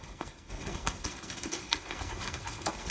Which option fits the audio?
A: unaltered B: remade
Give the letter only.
B